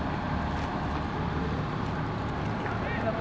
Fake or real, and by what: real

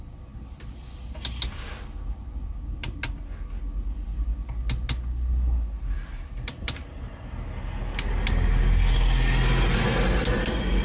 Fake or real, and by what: real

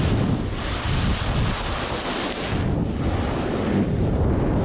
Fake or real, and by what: real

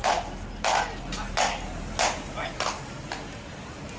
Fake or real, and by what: real